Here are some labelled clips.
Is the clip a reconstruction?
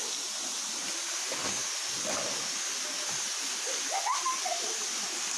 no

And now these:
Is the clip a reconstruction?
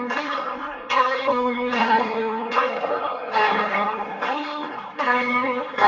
yes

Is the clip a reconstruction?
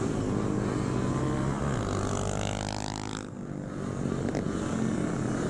no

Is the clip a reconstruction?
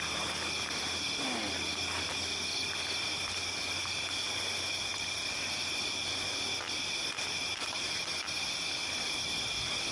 no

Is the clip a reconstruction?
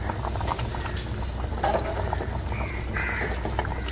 no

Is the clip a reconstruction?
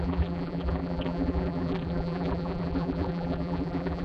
yes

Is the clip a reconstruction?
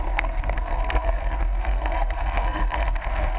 yes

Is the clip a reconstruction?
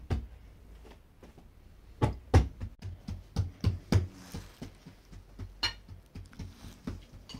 no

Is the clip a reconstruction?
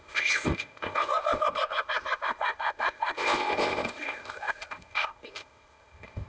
yes